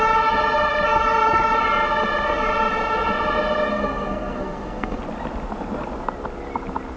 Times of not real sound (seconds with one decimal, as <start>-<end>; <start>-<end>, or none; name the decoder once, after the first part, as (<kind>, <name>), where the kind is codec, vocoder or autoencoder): 3.7-5.0 (codec, SNAC)

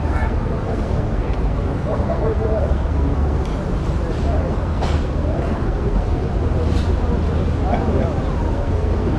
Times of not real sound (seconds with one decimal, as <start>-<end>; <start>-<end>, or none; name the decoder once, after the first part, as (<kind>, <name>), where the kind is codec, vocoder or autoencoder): 0.0-3.5 (codec, SNAC); 4.4-6.3; 8.5-9.2

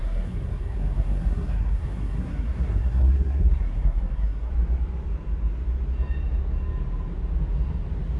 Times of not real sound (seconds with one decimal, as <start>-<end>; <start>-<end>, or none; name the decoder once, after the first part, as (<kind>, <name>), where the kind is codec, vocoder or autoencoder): 0.0-4.5 (codec, SNAC)

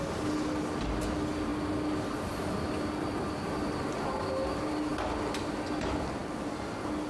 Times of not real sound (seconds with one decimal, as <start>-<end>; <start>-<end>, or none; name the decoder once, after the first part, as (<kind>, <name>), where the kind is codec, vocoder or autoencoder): none

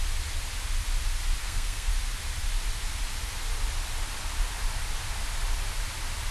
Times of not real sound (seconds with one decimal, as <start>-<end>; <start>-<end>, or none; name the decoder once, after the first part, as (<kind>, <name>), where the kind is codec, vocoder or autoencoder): 1.4-1.9 (codec, SNAC)